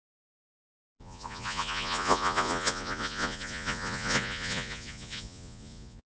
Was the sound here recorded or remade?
remade